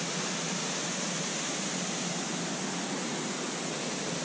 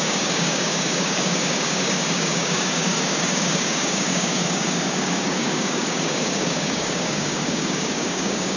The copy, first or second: second